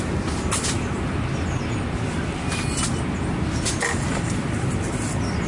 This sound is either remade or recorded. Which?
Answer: recorded